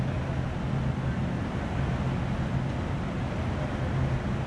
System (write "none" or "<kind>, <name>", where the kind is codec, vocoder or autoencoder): none